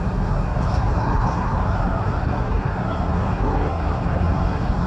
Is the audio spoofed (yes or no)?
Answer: yes